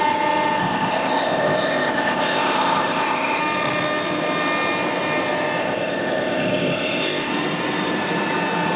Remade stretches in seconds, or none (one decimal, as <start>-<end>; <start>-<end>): 0.6-3.4; 5.6-7.3